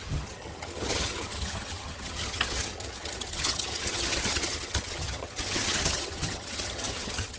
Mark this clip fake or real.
fake